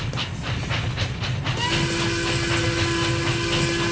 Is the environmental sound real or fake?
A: real